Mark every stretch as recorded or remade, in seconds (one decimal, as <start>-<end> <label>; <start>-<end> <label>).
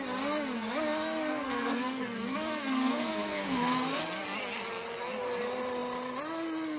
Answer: 0.0-1.3 recorded; 1.3-4.0 remade; 4.0-6.8 recorded